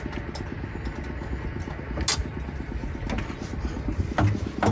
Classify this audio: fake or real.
real